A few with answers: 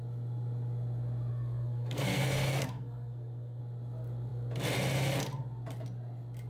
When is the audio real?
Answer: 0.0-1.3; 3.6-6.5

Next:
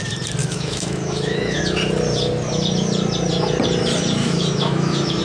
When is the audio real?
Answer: 0.0-0.4; 1.6-4.2

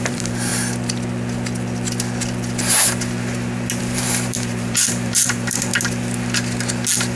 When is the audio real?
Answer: 0.5-3.8; 5.7-7.2